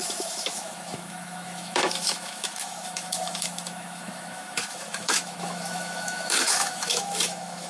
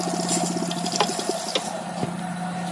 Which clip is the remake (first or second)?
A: first